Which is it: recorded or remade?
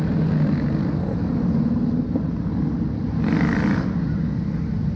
recorded